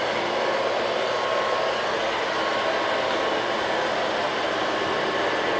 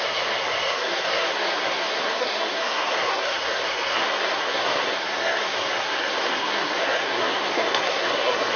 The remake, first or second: second